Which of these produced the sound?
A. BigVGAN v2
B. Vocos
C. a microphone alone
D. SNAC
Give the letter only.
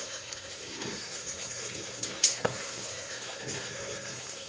D